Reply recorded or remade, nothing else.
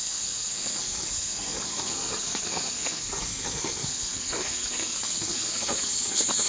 remade